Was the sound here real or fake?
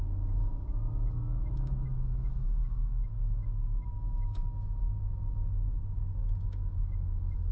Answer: fake